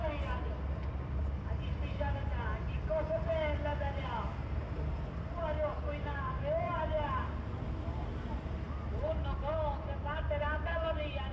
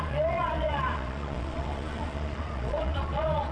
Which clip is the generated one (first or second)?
second